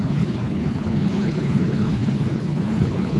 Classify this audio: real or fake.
fake